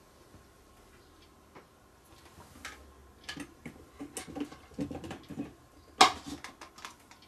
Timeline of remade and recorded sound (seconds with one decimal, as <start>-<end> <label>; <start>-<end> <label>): 0.0-7.3 recorded

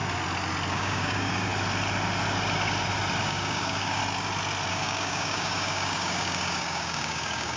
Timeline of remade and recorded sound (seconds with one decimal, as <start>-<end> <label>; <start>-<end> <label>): 0.0-0.7 recorded; 0.7-1.5 remade; 1.5-3.2 recorded; 3.2-4.0 remade; 4.0-4.7 recorded; 4.7-7.6 remade

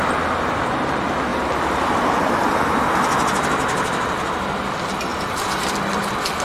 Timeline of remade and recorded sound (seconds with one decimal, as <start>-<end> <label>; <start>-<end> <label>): 0.0-1.3 recorded; 1.3-2.3 remade; 2.3-5.1 recorded; 5.1-5.7 remade; 5.7-6.4 recorded

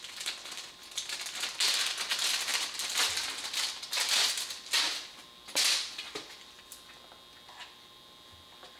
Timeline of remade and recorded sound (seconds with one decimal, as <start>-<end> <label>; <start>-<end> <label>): 0.0-8.8 recorded